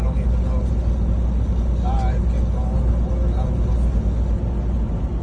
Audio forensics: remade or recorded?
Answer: recorded